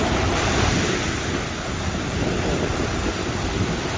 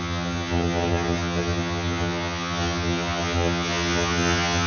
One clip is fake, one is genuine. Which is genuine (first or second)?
first